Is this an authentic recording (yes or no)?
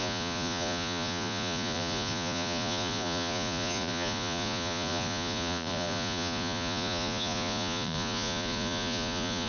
no